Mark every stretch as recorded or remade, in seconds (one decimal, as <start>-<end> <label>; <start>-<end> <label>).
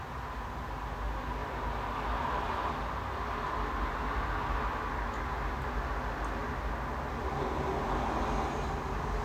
0.0-9.2 recorded